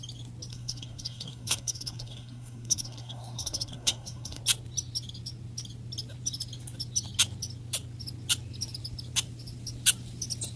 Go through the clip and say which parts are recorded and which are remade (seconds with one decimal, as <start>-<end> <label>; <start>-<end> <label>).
0.0-0.5 recorded; 0.5-4.4 remade; 4.4-10.6 recorded